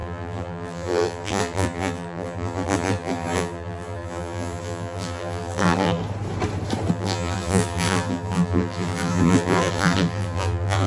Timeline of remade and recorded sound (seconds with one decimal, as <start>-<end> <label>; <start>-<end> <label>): 0.0-6.0 remade; 6.0-6.9 recorded; 6.9-10.9 remade